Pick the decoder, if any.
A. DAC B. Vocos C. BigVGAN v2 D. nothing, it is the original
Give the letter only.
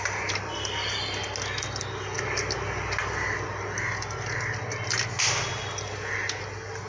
D